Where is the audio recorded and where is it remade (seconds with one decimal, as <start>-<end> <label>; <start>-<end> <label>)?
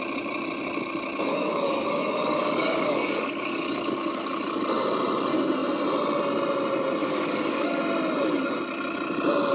0.0-1.3 recorded; 1.3-4.6 remade; 4.6-7.0 recorded; 7.0-7.8 remade; 7.8-9.5 recorded